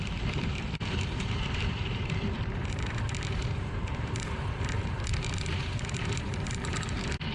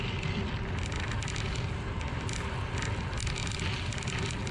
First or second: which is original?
second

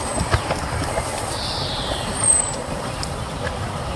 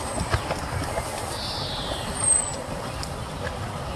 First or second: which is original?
second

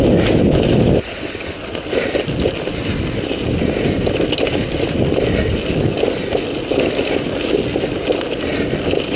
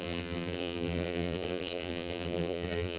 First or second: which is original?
first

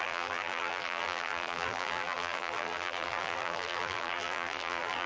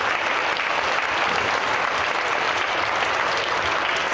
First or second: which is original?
second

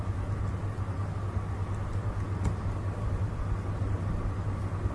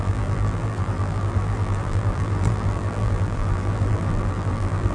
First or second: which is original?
first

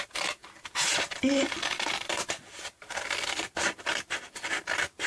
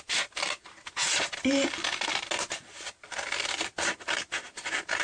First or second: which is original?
second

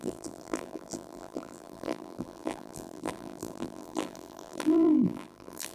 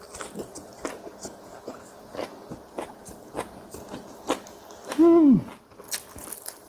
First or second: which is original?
second